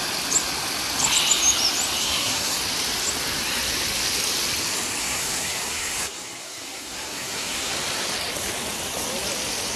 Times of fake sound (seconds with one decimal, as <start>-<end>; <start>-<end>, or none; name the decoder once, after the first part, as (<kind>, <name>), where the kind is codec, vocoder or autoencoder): 2.0-2.6 (codec, SNAC); 5.0-7.7